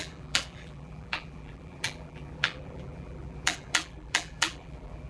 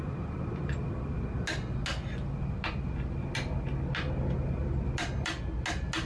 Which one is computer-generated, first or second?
first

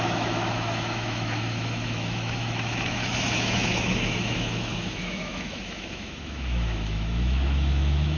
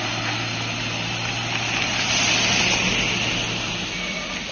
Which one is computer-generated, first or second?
first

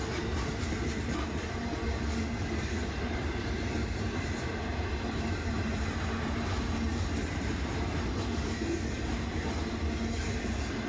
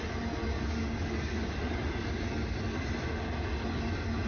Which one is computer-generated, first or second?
first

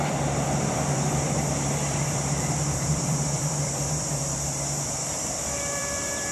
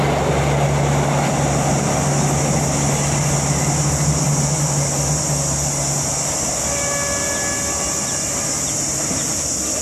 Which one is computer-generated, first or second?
first